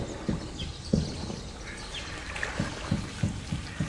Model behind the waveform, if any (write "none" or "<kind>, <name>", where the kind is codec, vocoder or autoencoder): none